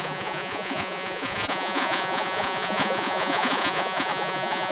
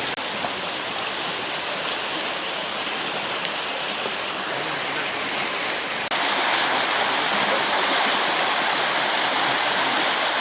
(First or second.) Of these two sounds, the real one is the second